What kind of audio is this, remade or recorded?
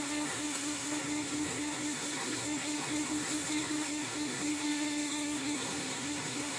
remade